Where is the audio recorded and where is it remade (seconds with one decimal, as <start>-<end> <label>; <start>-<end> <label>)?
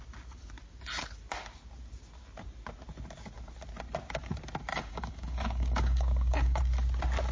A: 0.0-4.7 recorded; 4.7-6.6 remade; 6.6-7.3 recorded